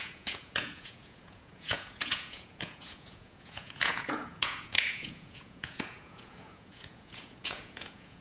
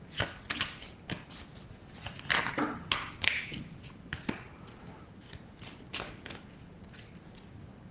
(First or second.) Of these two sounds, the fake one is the first